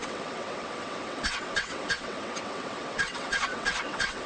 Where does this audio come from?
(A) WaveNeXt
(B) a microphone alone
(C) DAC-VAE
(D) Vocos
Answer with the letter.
A